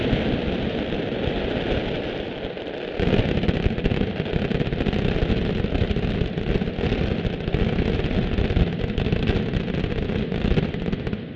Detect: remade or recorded recorded